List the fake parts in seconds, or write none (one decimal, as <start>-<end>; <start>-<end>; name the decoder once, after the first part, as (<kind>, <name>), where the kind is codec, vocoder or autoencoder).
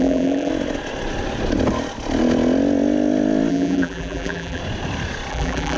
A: 0.0-0.5 (vocoder, BigVGAN v2); 3.5-4.6; 5.3-5.8